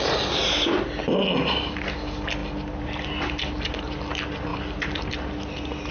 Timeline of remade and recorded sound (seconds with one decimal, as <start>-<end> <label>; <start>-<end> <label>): 0.0-4.5 recorded; 4.5-5.1 remade; 5.1-5.9 recorded